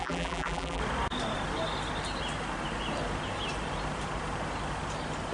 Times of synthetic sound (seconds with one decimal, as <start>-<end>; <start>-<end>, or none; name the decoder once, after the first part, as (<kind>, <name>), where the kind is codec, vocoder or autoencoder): 0.0-0.8 (vocoder, BigVGAN v2)